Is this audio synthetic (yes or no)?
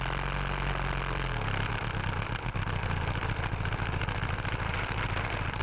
no